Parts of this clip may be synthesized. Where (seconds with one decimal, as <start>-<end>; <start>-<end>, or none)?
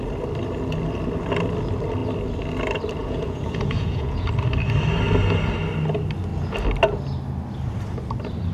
3.0-4.3